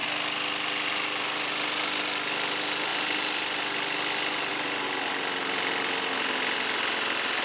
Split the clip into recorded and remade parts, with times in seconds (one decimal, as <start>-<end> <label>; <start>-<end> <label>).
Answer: 0.0-7.4 recorded